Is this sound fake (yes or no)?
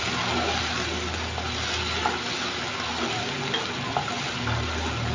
no